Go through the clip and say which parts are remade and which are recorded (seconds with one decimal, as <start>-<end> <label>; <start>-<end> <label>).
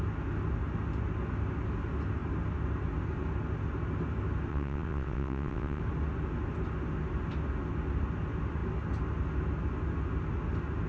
0.0-4.5 recorded; 4.5-5.8 remade; 5.8-10.9 recorded